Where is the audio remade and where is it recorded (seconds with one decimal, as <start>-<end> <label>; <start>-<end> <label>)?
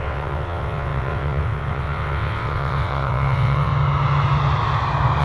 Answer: 0.0-3.7 remade; 3.7-5.2 recorded